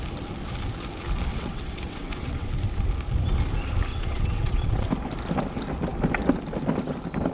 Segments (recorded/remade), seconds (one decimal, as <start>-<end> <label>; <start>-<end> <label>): 0.0-1.3 recorded; 1.3-2.5 remade; 2.5-3.9 recorded; 3.9-4.9 remade; 4.9-7.3 recorded